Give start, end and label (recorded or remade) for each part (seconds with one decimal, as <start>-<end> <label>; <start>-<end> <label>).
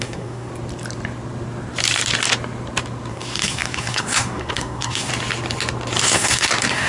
0.0-0.5 remade; 0.5-3.1 recorded; 3.1-5.1 remade; 5.1-6.0 recorded; 6.0-6.9 remade